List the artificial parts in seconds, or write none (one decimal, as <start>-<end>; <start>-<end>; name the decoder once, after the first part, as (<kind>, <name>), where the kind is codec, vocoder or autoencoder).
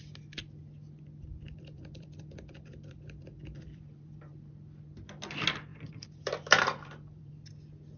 1.3-4.5 (vocoder, BigVGAN v2); 5.7-7.3